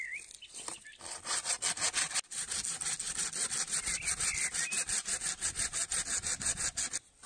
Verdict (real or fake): real